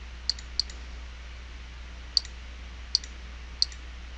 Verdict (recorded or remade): recorded